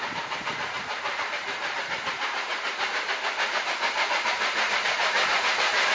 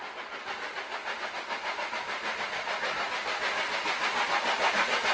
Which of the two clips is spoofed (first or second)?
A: first